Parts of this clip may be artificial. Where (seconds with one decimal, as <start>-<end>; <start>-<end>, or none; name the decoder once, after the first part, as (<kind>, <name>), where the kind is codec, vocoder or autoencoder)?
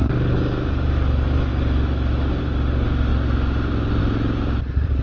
none